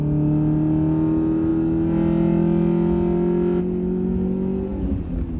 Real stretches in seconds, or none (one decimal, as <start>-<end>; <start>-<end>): 0.0-5.4